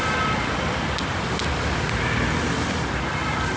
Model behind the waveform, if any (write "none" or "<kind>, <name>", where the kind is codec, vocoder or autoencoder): none